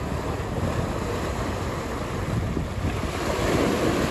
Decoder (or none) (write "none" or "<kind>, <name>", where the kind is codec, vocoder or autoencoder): none